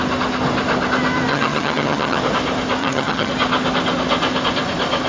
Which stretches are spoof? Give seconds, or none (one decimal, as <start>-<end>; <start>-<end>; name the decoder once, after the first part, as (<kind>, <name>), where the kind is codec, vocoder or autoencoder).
1.3-2.2 (vocoder, HiFi-GAN); 2.8-3.3